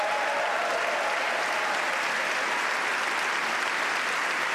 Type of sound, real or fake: real